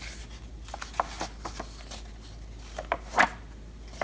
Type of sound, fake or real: real